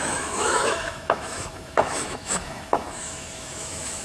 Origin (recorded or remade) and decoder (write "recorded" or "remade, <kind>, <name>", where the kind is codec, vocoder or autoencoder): remade, autoencoder, DAC-VAE